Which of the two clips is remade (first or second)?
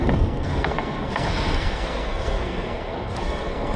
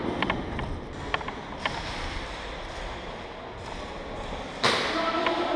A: first